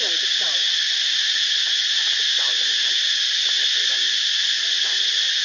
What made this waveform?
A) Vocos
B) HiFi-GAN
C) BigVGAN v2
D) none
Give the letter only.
D